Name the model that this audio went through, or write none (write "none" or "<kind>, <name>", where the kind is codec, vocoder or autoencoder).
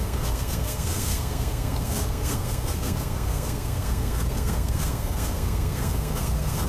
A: codec, SNAC